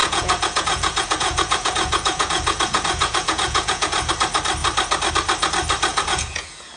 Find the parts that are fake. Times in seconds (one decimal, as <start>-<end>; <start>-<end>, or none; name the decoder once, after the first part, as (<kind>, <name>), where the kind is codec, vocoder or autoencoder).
0.0-4.1 (vocoder, Vocos); 5.9-6.8